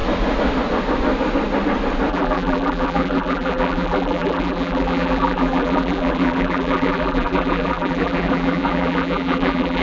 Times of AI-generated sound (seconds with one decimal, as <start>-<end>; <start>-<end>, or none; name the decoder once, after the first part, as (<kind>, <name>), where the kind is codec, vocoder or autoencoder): 2.1-9.8 (vocoder, BigVGAN v2)